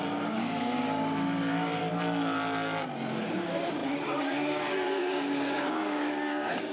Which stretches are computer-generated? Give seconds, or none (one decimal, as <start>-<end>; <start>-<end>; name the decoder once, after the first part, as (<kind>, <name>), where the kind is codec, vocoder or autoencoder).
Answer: 0.0-1.8 (codec, DAC); 3.3-6.7